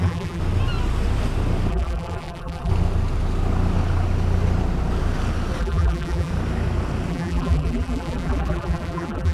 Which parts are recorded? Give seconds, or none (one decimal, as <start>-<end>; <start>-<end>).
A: 0.4-1.7; 2.7-5.6; 6.3-7.1